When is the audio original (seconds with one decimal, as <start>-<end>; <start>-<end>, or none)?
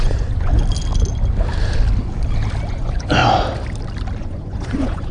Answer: 0.5-2.7; 3.2-4.2